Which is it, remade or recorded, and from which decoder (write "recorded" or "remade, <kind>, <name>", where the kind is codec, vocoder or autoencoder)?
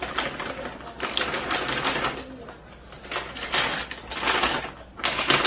recorded